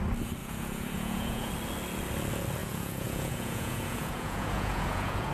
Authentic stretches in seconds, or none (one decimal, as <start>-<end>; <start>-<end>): 0.0-0.4; 1.5-2.6